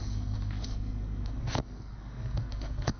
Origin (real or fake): fake